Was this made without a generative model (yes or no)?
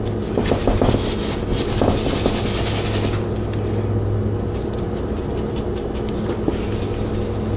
yes